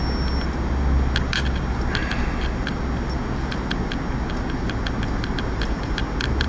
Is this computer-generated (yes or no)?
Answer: no